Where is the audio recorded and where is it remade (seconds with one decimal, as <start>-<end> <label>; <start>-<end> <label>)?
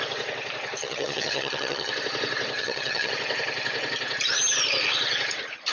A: 0.0-0.8 recorded; 0.8-1.9 remade; 1.9-2.6 recorded; 2.6-3.1 remade; 3.1-5.7 recorded